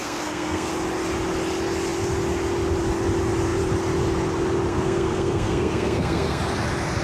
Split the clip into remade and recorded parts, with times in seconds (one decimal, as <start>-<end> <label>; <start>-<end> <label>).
0.0-0.7 remade; 0.7-4.7 recorded; 4.7-6.4 remade; 6.4-7.0 recorded